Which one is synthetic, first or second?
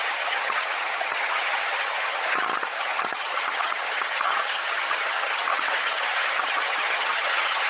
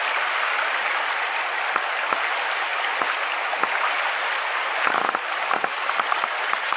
first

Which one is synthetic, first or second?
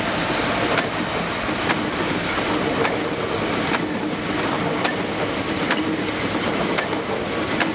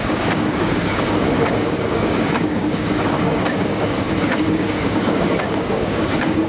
second